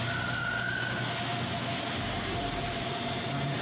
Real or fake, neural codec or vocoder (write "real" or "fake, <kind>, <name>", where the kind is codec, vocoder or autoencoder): real